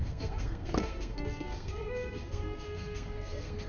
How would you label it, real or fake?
fake